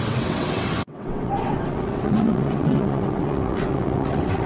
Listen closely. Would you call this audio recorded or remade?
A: remade